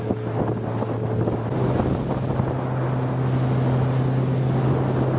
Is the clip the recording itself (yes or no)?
yes